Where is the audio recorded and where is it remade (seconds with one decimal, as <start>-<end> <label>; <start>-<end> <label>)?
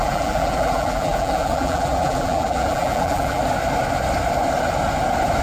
0.0-3.4 remade; 3.4-5.4 recorded